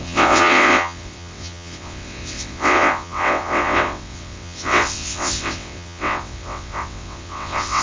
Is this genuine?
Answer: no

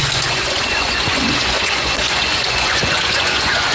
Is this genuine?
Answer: no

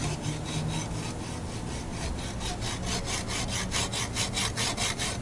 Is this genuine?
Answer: yes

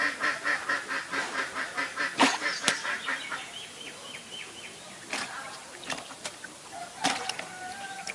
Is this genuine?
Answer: no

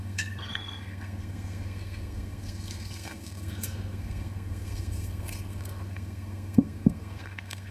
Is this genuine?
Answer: no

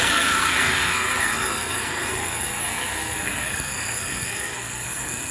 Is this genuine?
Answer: no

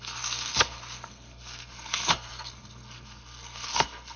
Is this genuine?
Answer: no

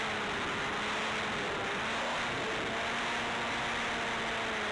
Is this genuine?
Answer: yes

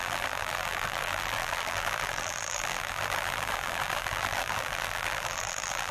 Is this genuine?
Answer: no